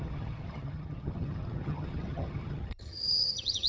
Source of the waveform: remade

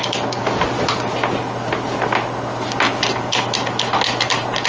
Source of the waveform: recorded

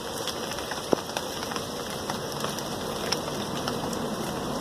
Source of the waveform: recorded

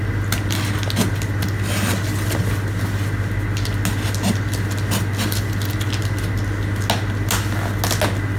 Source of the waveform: recorded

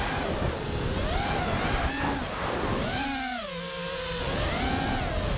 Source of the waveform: recorded